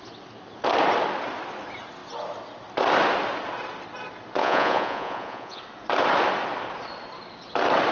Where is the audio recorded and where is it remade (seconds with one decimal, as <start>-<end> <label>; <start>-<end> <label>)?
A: 0.0-4.4 recorded; 4.4-5.6 remade; 5.6-7.9 recorded